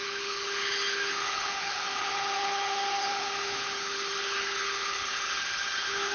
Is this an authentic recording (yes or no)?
no